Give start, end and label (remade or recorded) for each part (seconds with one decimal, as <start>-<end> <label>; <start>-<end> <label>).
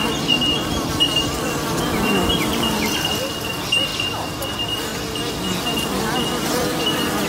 0.0-7.3 recorded